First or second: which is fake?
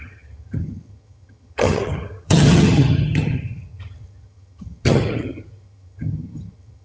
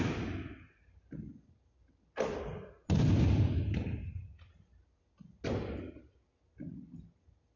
first